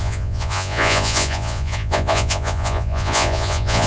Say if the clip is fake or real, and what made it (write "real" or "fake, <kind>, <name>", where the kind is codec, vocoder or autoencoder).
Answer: fake, vocoder, Vocos